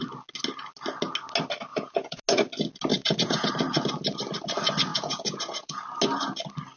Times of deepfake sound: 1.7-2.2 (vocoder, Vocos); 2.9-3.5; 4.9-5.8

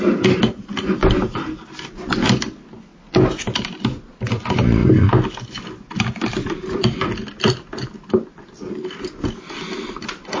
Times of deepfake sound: none

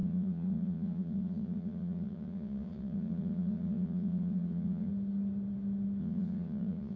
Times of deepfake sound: 0.0-4.9 (vocoder, Vocos); 6.0-7.0

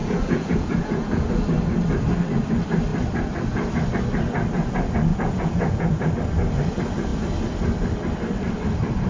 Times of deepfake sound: 0.0-1.3 (vocoder, Vocos); 5.1-6.1